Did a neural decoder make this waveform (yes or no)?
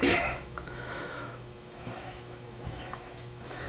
yes